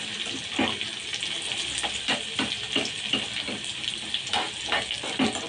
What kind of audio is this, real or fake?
real